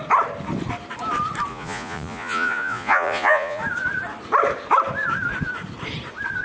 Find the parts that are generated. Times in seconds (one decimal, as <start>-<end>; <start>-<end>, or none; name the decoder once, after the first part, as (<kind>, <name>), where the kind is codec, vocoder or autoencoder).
1.5-3.6 (vocoder, Vocos)